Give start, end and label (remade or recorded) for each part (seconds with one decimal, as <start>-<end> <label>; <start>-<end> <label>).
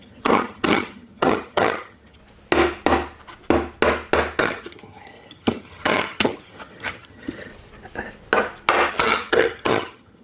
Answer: 0.0-2.2 remade; 2.2-4.4 recorded; 4.4-7.5 remade; 7.5-8.9 recorded; 8.9-10.2 remade